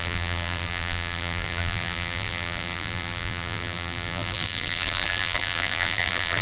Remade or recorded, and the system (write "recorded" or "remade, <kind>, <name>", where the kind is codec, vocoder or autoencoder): remade, vocoder, BigVGAN v2